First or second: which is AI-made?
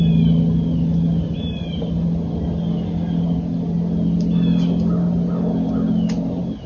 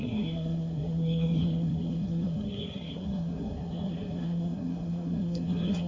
second